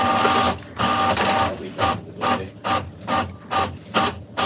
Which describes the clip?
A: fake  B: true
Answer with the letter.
B